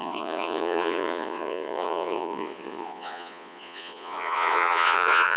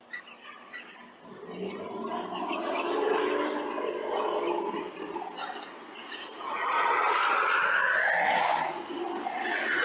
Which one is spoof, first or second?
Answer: first